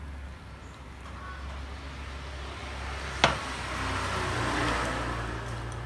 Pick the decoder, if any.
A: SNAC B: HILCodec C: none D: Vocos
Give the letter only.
C